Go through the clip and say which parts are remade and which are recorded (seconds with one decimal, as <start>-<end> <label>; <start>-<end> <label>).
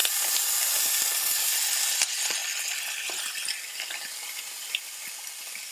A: 0.0-5.7 recorded